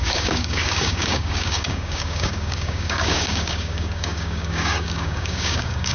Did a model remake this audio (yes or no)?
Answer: yes